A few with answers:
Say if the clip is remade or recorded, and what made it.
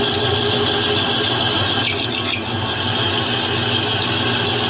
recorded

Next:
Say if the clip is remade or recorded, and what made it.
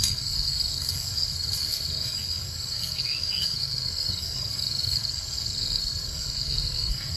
remade, codec, SNAC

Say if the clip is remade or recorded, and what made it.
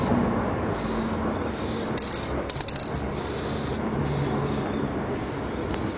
recorded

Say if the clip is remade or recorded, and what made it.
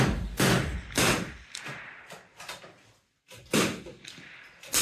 recorded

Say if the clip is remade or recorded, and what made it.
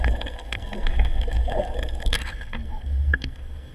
remade, codec, SNAC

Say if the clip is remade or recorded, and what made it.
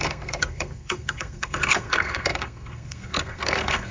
remade, codec, SNAC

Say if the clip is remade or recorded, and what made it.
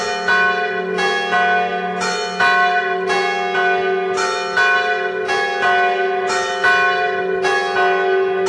recorded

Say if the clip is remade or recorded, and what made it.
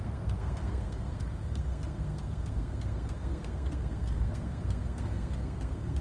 remade, codec, SNAC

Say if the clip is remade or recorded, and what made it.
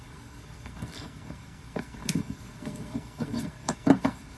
remade, codec, SNAC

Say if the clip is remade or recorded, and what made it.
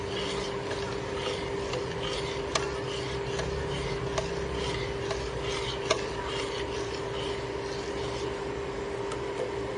recorded